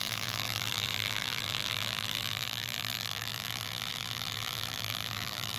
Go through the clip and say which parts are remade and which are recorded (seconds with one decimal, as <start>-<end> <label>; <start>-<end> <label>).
0.0-5.6 remade

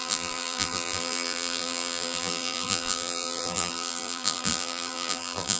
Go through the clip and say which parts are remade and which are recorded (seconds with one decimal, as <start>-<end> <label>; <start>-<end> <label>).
0.0-5.6 remade

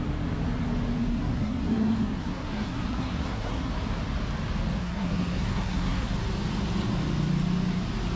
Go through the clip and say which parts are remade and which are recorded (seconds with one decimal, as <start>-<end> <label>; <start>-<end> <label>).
0.0-1.1 recorded; 1.1-3.7 remade; 3.7-4.8 recorded; 4.8-6.1 remade; 6.1-8.2 recorded

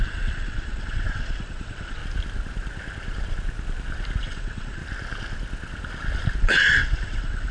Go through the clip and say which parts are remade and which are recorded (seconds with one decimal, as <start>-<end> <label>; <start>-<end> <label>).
0.0-2.0 remade; 2.0-4.2 recorded; 4.2-4.8 remade; 4.8-6.4 recorded; 6.4-7.5 remade

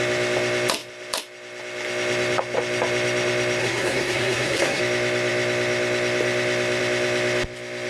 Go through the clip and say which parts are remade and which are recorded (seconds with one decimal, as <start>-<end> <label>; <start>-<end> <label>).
0.0-3.6 recorded; 3.6-4.8 remade; 4.8-7.9 recorded